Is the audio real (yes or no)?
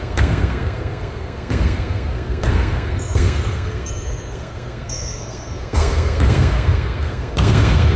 no